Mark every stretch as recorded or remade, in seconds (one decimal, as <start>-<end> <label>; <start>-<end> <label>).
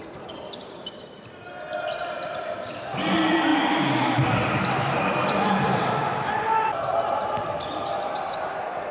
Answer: 0.0-3.5 remade; 3.5-7.5 recorded; 7.5-8.9 remade